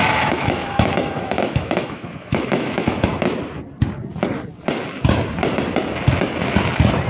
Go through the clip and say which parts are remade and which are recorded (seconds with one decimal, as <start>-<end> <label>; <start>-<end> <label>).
0.0-3.1 remade; 3.1-7.1 recorded